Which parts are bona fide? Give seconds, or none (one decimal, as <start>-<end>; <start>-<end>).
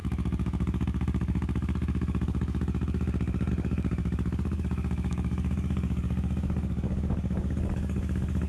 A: none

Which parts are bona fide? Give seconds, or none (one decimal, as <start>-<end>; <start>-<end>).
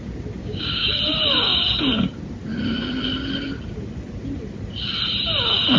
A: 0.0-0.4; 0.9-5.8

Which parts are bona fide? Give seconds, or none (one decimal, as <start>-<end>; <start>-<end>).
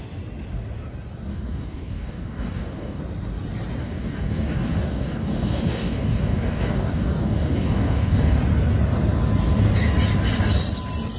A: 0.0-1.3; 3.0-3.8; 8.4-11.2